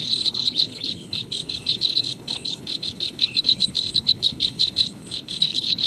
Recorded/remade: remade